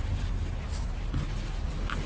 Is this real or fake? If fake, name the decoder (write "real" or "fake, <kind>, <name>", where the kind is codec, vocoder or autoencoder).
real